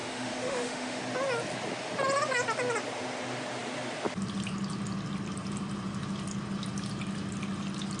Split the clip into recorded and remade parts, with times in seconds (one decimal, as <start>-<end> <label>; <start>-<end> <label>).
0.0-1.0 remade; 1.0-8.0 recorded